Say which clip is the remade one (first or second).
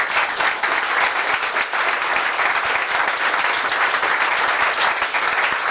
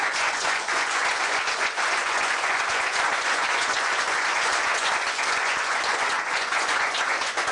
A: second